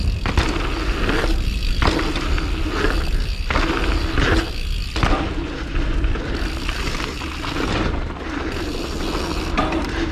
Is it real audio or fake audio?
real